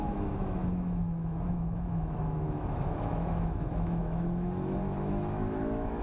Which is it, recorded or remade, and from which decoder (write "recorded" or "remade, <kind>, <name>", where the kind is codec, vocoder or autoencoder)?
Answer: remade, autoencoder, DAC-VAE